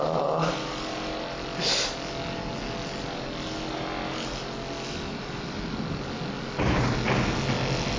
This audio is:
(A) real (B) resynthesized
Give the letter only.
A